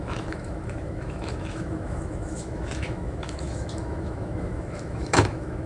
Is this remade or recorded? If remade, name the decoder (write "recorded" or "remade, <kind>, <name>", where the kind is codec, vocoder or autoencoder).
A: remade, autoencoder, DAC-VAE